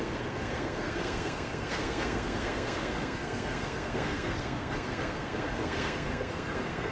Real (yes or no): no